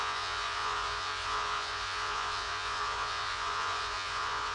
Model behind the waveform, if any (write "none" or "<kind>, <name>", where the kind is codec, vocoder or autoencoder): vocoder, Vocos